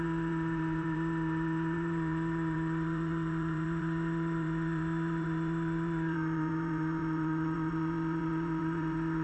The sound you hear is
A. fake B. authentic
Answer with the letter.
A